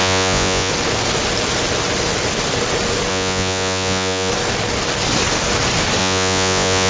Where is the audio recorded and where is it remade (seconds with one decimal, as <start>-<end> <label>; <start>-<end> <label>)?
0.0-0.7 remade; 0.7-3.1 recorded; 3.1-4.3 remade; 4.3-6.0 recorded; 6.0-6.9 remade